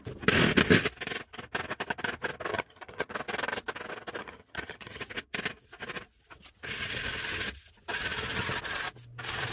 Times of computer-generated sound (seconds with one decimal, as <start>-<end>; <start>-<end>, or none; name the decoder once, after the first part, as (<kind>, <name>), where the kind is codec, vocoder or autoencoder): 2.5-3.1 (vocoder, HiFi-GAN); 4.2-5.0